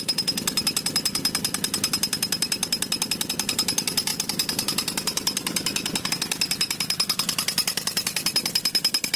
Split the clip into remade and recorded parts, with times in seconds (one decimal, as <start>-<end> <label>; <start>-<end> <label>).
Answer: 0.0-9.2 recorded